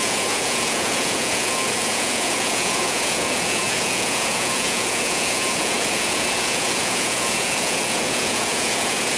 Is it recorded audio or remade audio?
remade